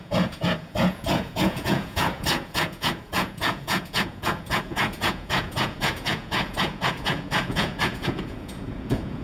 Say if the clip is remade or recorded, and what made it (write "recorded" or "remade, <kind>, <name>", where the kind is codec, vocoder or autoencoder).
remade, vocoder, Vocos